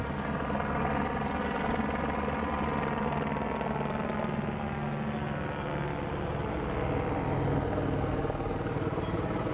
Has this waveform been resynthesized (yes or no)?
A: no